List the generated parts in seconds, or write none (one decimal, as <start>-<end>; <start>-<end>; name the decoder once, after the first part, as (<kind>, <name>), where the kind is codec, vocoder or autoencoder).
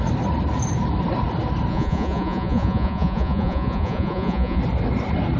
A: 1.7-4.6 (vocoder, Vocos)